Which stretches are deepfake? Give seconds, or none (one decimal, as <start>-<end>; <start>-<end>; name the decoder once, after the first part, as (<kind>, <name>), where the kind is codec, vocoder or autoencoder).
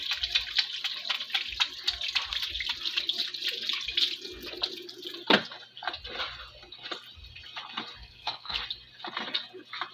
8.0-8.6 (codec, SNAC)